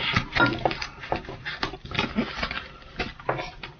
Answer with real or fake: real